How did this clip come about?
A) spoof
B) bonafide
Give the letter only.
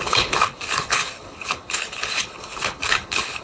A